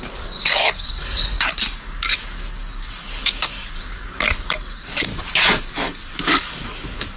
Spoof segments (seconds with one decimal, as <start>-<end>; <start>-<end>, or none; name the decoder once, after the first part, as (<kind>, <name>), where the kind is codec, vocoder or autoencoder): 0.0-5.1 (codec, DAC); 5.6-7.2